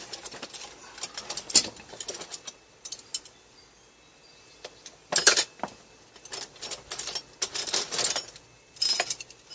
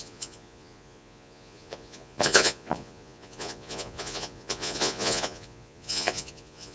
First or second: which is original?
first